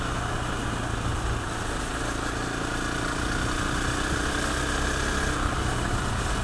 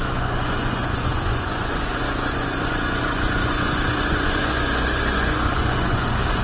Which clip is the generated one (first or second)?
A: second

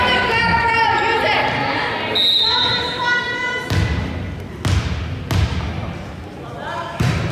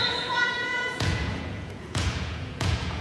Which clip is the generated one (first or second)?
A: second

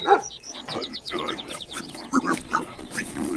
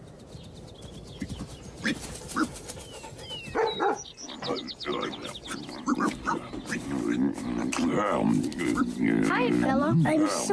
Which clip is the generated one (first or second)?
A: first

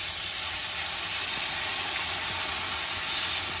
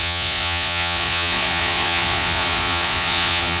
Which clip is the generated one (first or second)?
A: second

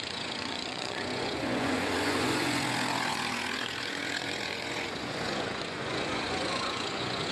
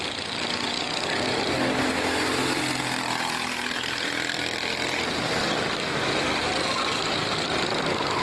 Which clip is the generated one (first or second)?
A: first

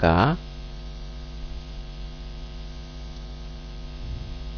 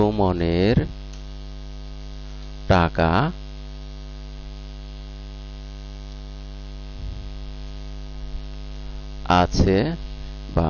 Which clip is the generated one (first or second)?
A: first